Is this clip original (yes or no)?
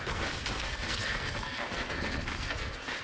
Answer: no